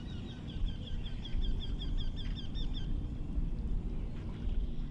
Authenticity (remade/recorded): remade